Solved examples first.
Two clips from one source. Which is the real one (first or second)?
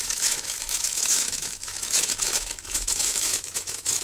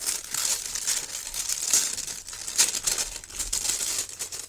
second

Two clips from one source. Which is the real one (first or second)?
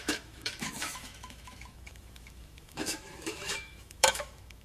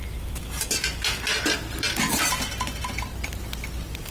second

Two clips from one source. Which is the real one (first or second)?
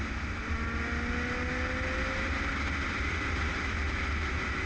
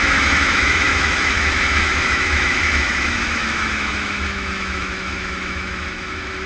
first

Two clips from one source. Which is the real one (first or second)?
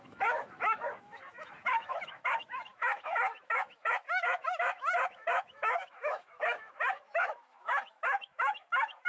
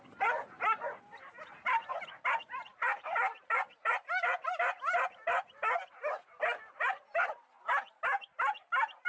second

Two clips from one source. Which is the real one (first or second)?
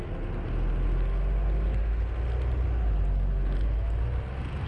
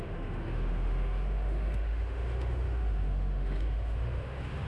first